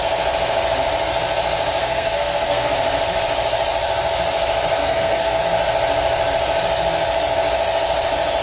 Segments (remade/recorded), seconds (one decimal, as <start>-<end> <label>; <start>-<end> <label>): 0.0-1.8 recorded; 1.8-2.7 remade; 2.7-4.8 recorded; 4.8-5.4 remade; 5.4-8.4 recorded